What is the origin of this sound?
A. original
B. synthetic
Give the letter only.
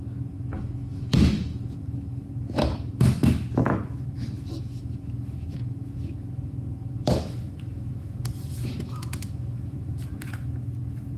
B